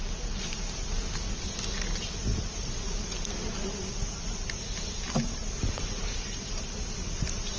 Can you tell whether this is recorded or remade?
recorded